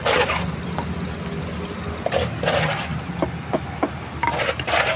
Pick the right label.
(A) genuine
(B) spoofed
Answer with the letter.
A